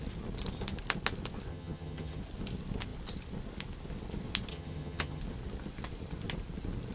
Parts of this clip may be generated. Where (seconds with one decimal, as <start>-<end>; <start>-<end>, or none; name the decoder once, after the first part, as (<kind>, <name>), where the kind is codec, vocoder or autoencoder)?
1.5-2.2 (vocoder, HiFi-GAN); 4.5-5.2